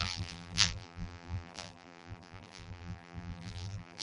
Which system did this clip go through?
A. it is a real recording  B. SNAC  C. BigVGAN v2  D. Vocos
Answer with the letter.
C